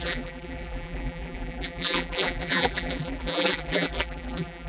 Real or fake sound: fake